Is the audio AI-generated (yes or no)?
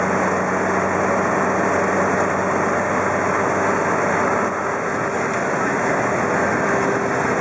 no